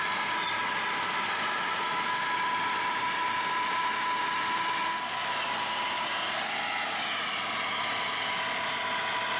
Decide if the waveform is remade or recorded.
recorded